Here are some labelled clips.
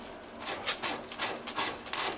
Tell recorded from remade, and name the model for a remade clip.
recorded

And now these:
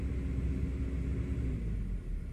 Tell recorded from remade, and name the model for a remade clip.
recorded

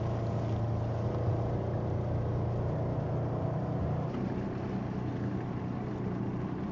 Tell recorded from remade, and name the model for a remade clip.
recorded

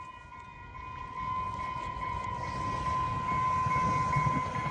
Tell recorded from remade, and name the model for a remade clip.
recorded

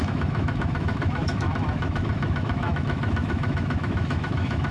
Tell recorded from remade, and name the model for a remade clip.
remade, autoencoder, DAC-VAE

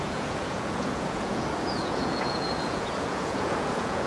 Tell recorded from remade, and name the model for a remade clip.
remade, vocoder, Vocos